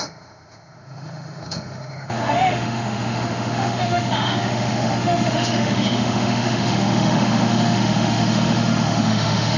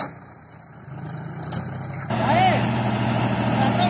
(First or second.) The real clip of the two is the second